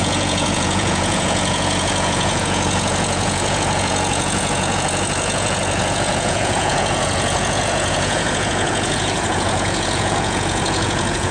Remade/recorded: remade